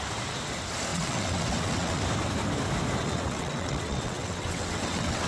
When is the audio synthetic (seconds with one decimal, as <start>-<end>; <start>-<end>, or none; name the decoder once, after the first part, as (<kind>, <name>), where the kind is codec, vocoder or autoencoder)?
0.9-2.0 (vocoder, WaveNeXt); 3.0-5.3